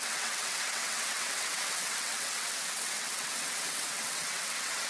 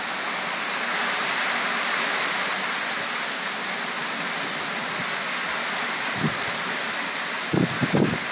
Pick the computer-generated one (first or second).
first